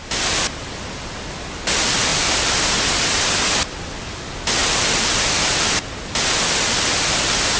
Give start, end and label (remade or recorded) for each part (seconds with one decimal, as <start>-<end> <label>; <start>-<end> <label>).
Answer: 0.0-7.6 recorded